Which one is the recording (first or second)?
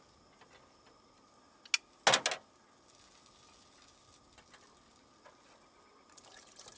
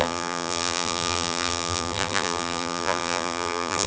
first